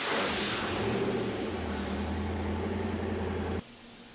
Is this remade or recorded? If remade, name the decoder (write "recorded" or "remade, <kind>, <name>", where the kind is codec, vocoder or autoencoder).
recorded